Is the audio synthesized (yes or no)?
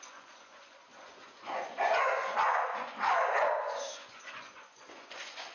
yes